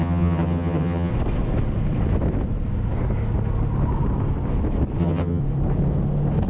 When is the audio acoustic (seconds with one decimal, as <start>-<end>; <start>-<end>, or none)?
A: 1.1-5.0; 5.4-6.5